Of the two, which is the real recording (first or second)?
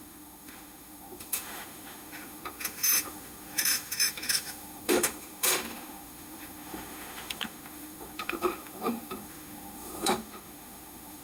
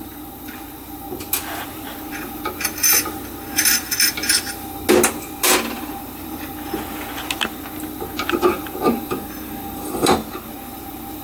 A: second